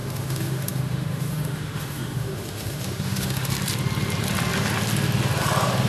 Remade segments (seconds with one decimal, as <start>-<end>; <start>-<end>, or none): 0.0-3.5